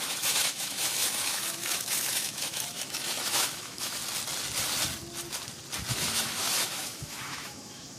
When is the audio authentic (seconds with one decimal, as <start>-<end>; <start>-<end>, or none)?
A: 4.0-5.9